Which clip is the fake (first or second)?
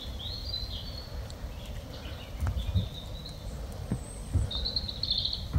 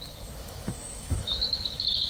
second